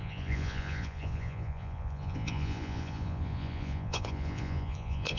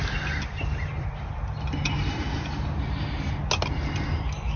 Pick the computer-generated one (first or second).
first